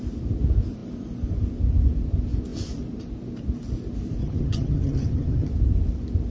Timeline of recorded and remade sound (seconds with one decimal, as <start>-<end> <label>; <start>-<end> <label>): 0.0-4.2 recorded; 4.2-5.5 remade; 5.5-6.3 recorded